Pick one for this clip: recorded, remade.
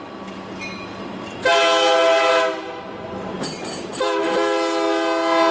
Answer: recorded